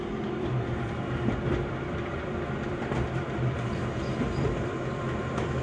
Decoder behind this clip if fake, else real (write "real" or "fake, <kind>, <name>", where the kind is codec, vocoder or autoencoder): fake, vocoder, BigVGAN v2